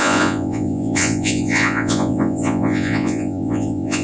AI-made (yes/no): yes